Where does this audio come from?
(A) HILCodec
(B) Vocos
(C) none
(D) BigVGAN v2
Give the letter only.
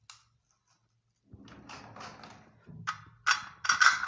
C